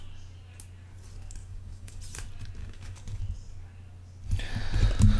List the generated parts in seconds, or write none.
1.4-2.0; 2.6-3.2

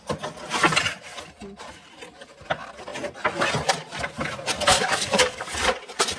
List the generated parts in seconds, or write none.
4.7-5.5

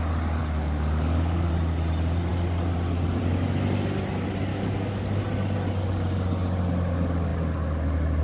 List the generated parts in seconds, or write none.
0.4-1.5; 4.5-5.2

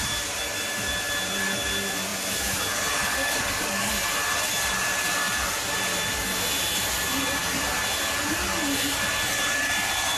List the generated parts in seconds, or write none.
3.1-3.9

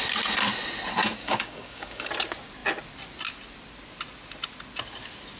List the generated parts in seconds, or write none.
1.2-2.1

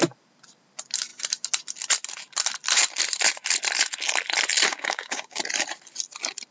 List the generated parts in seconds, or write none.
4.7-5.4

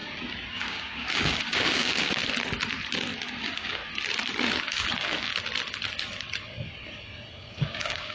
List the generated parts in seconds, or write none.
0.5-2.2; 3.4-3.8; 4.6-5.3; 7.5-8.1

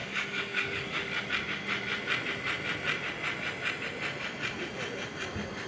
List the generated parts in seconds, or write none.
0.0-1.3